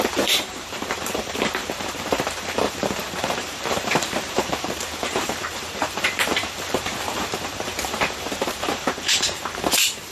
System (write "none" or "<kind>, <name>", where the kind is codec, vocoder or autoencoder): vocoder, BigVGAN v2